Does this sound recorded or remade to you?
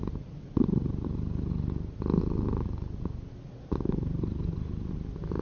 recorded